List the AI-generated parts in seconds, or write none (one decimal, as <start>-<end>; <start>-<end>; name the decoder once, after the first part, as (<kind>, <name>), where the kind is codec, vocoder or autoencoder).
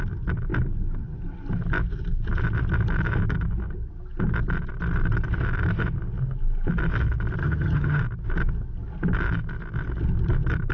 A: 7.4-8.0 (vocoder, HiFi-GAN)